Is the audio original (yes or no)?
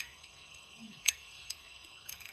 no